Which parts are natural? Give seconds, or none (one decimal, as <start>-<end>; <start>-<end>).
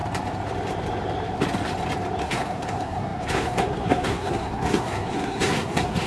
0.0-2.2